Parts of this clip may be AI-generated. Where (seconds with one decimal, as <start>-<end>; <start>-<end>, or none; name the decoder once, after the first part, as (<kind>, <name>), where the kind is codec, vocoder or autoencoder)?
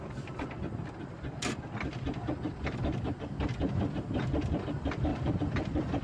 5.1-6.0 (vocoder, BigVGAN v2)